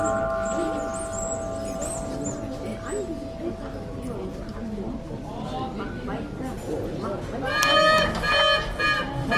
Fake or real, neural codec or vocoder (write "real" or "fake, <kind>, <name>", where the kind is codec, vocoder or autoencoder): real